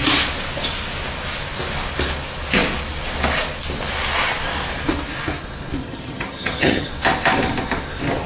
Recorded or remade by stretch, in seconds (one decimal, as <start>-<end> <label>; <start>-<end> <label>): 0.0-5.8 recorded; 5.8-6.9 remade; 6.9-8.3 recorded